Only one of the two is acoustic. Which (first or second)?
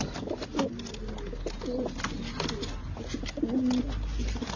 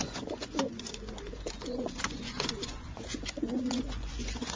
first